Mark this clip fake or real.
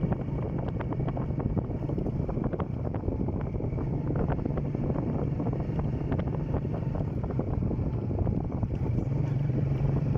fake